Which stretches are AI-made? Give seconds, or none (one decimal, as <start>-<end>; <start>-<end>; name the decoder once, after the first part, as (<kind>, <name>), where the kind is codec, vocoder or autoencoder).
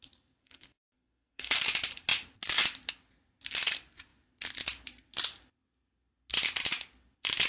0.4-1.6 (codec, SNAC)